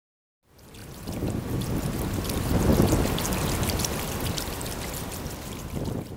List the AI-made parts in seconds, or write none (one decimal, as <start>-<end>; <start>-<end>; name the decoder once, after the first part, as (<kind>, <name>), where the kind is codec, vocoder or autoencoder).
none